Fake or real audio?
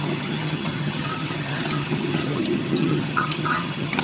fake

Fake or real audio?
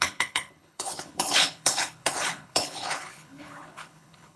fake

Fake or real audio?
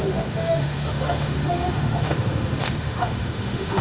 fake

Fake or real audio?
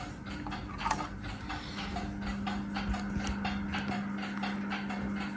real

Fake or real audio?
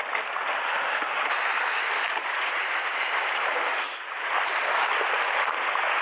real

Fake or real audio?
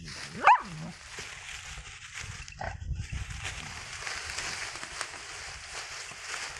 real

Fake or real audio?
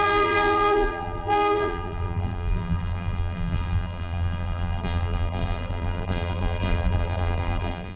fake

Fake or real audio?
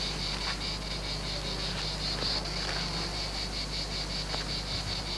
real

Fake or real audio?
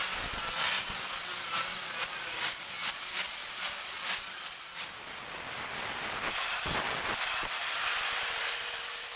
real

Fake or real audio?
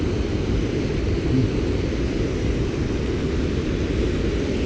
real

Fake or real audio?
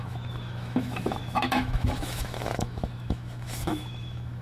fake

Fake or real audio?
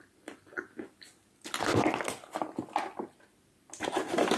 real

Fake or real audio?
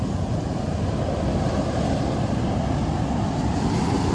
real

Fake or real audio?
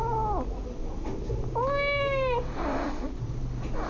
real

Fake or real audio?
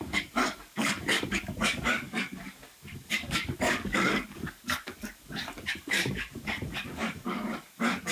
fake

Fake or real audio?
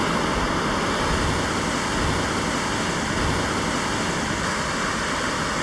real